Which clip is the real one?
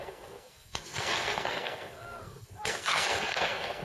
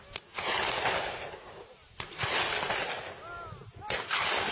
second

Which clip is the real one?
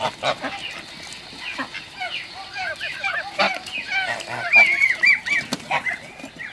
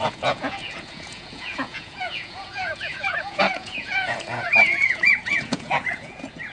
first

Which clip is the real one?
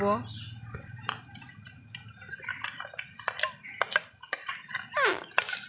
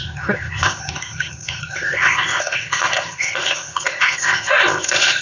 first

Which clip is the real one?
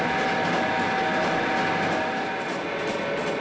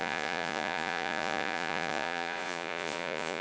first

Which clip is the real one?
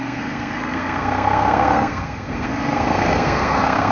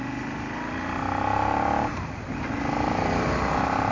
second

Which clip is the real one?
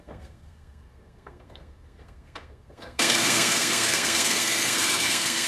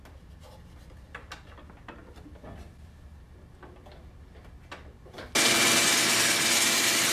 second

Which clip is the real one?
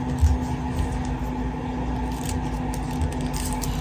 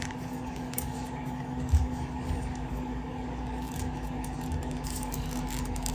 first